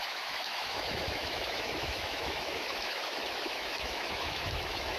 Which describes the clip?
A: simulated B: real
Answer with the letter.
A